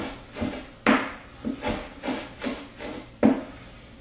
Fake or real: real